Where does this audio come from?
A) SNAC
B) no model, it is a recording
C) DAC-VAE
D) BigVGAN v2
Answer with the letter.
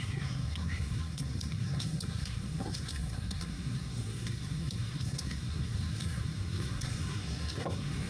A